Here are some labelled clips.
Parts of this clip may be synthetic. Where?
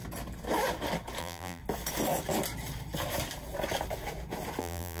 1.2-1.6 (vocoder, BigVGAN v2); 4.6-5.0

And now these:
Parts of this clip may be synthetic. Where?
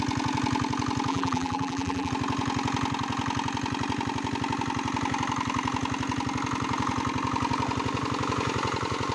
1.1-2.1 (vocoder, BigVGAN v2)